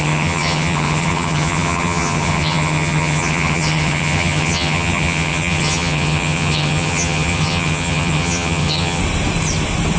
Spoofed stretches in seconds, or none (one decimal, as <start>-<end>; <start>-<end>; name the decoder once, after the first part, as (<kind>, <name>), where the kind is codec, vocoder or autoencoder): 0.0-9.0 (vocoder, HiFi-GAN)